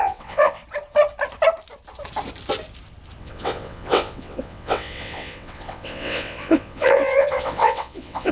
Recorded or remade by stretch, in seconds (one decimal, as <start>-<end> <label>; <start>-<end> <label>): 0.0-0.6 remade; 0.6-3.2 recorded; 3.2-8.3 remade